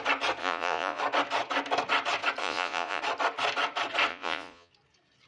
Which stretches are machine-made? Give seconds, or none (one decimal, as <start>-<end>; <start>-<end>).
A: 0.4-1.0; 2.4-3.0; 4.1-4.7